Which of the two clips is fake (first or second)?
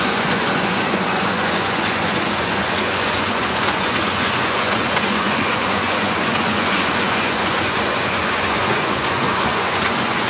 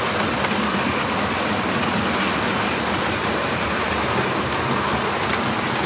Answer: first